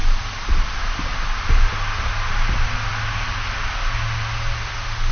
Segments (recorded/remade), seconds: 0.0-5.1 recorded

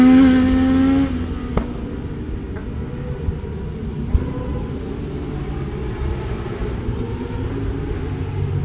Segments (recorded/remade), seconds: 0.0-3.8 recorded; 3.8-8.2 remade; 8.2-8.6 recorded

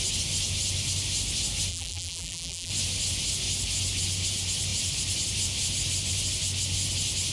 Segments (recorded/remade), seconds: 0.0-1.7 recorded; 1.7-2.7 remade; 2.7-7.3 recorded

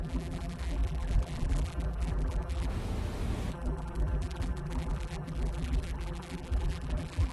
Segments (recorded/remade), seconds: 0.0-2.7 remade; 2.7-3.5 recorded; 3.5-7.3 remade

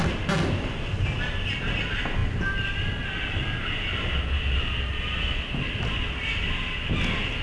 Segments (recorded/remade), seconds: 0.0-7.4 recorded

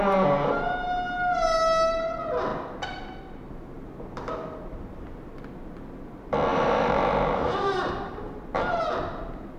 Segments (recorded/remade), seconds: 0.0-6.5 recorded; 6.5-8.3 remade; 8.3-9.6 recorded